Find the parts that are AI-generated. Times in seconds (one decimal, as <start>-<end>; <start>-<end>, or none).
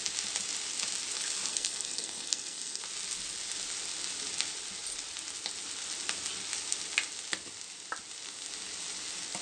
1.5-2.8